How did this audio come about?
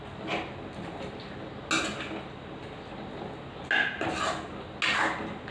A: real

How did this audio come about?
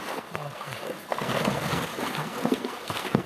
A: fake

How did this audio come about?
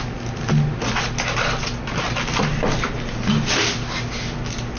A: real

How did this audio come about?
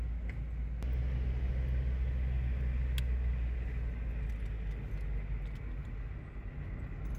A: real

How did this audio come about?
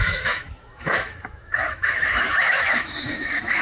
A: fake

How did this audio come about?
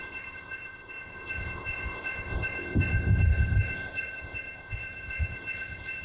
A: fake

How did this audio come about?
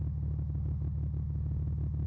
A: real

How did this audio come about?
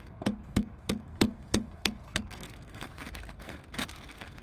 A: fake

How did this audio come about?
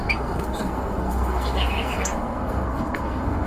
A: fake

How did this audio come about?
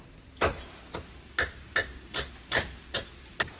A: real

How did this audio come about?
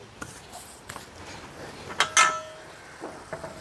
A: real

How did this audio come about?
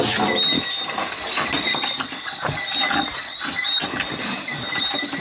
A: real